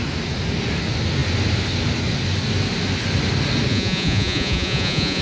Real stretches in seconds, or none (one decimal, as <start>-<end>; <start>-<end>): 0.0-3.7